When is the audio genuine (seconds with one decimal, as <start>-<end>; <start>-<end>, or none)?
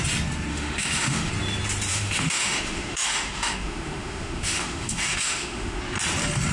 0.0-0.5; 1.3-1.9; 5.8-6.5